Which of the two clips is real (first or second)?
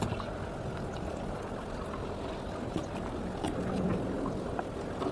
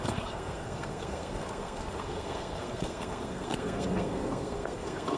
first